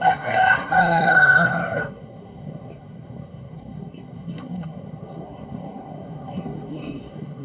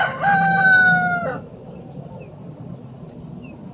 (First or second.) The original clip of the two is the second